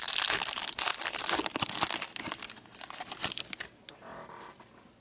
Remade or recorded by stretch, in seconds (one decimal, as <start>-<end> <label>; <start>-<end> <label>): 0.0-5.0 recorded